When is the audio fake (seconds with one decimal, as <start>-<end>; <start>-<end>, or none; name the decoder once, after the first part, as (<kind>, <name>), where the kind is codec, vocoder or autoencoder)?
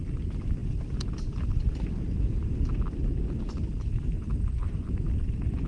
none